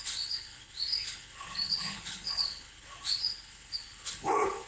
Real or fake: fake